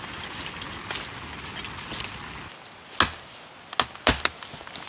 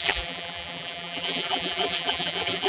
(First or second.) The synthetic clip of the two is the second